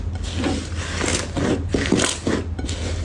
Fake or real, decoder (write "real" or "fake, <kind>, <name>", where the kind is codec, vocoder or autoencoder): real